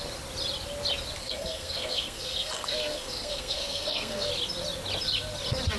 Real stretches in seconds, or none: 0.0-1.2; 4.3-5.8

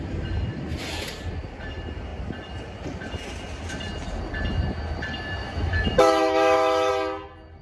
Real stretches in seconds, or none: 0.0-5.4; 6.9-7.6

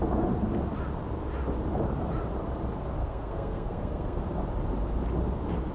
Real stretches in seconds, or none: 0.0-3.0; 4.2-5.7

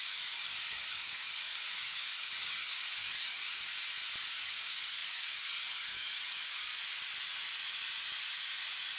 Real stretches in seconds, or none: 3.7-4.3; 6.7-9.0